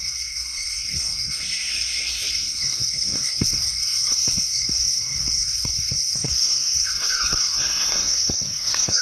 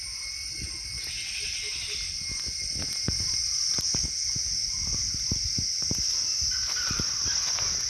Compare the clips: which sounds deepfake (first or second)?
first